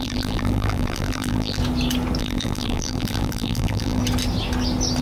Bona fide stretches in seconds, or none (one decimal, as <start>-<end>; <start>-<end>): 1.6-2.2; 4.0-5.0

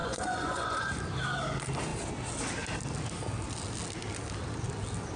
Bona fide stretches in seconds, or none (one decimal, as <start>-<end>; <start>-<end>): 0.9-5.2